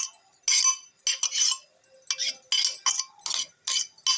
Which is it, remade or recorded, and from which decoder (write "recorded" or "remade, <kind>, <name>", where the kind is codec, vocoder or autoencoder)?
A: recorded